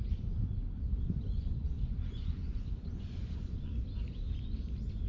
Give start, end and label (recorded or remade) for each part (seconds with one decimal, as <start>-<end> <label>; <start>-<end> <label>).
0.0-0.9 recorded; 0.9-3.7 remade; 3.7-5.1 recorded